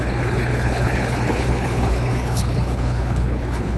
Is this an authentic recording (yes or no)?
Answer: no